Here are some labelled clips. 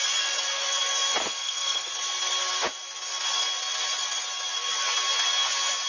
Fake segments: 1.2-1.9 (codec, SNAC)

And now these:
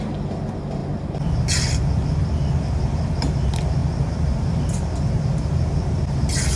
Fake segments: none

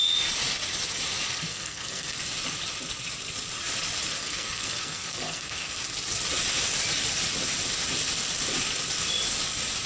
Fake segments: 1.5-2.2 (codec, SNAC); 4.2-5.7

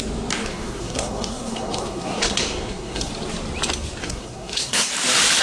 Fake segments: 0.4-3.1 (codec, SNAC); 4.0-4.9

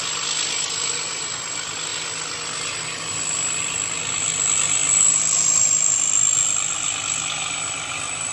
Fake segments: none